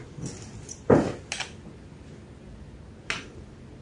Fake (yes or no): no